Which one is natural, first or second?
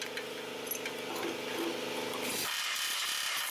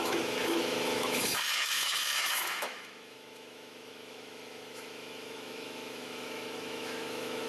first